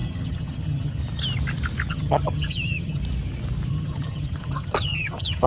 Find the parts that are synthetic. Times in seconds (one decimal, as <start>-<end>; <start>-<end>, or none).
0.0-1.0; 1.9-3.0; 3.7-5.5